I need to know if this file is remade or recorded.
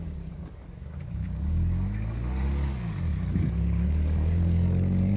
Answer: remade